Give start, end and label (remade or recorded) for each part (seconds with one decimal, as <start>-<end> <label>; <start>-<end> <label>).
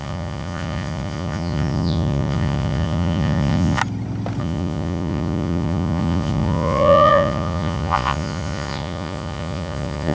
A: 0.0-3.8 remade; 3.8-4.4 recorded; 4.4-10.1 remade